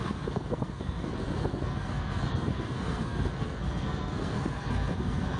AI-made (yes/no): yes